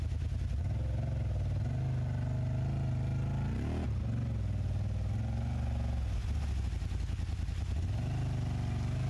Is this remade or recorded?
recorded